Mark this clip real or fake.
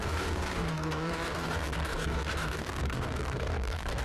fake